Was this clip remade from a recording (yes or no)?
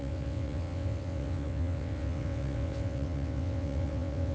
yes